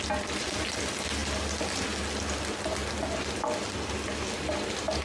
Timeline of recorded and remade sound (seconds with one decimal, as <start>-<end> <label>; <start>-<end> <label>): 0.0-5.0 recorded